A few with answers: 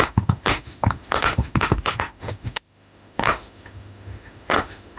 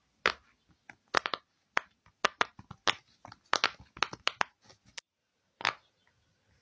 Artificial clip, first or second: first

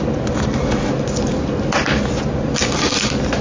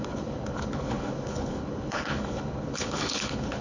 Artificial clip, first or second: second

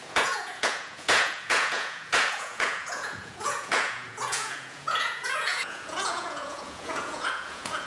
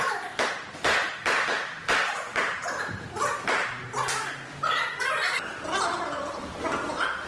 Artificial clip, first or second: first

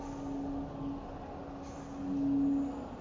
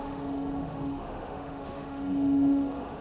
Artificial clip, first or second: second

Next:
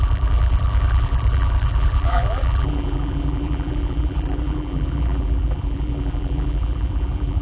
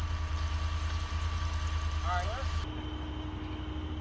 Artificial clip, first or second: first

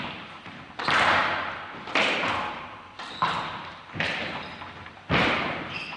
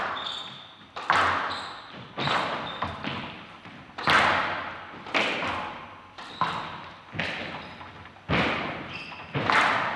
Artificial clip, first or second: first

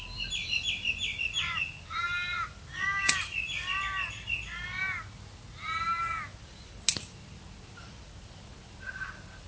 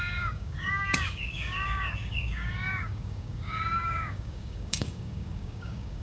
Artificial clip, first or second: second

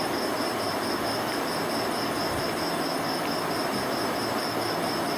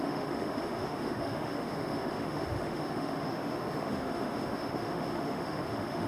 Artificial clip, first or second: second